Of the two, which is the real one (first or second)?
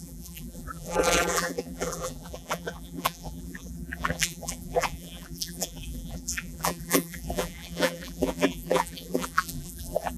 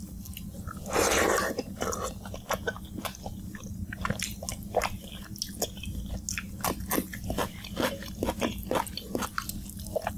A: second